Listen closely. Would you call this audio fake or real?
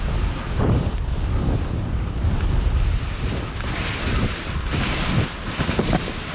real